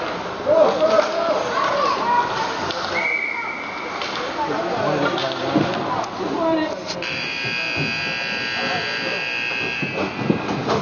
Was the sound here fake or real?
real